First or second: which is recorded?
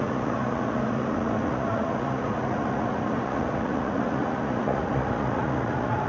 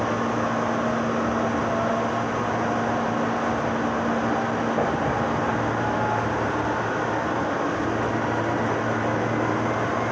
second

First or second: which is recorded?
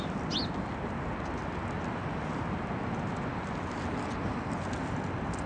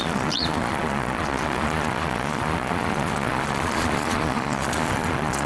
first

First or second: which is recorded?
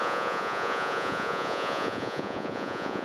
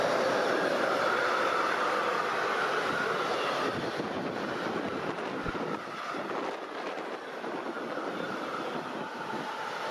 second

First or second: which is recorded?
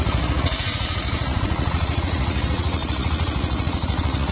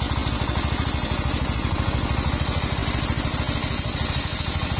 second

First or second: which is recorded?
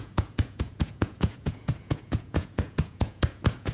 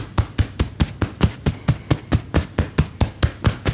second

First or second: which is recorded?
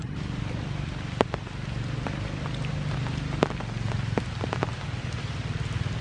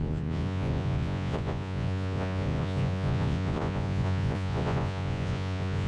first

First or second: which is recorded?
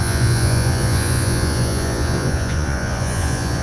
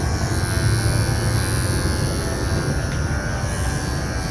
second